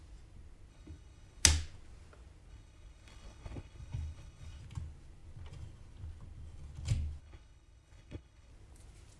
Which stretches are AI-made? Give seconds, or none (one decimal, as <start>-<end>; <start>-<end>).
0.7-1.4; 2.5-4.6; 7.2-8.5